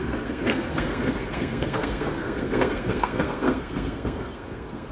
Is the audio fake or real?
fake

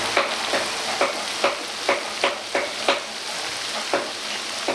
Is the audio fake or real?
real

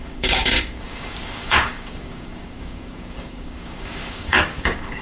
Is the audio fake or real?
fake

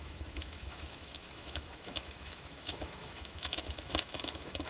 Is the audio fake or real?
fake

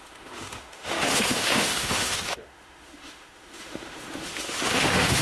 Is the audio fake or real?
fake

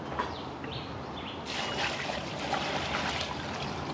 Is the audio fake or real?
real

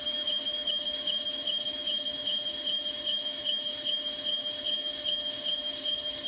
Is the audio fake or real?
fake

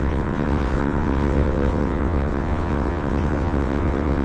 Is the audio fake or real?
fake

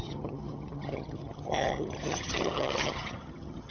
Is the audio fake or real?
fake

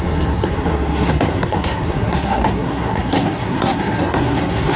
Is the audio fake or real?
fake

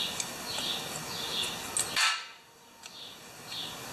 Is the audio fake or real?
real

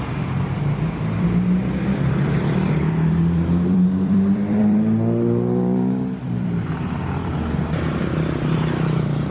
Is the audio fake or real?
fake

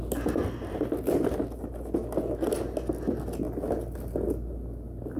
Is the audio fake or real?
real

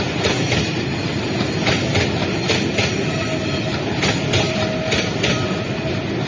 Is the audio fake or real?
real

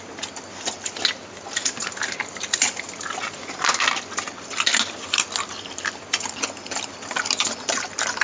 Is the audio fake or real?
real